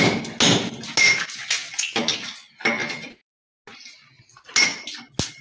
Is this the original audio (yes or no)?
yes